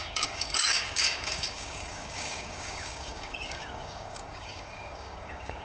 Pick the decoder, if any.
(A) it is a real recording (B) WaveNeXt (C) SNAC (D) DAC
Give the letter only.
D